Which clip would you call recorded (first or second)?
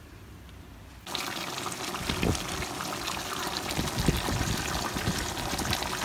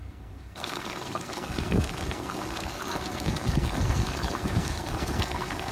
first